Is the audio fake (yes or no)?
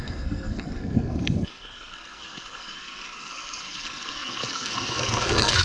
yes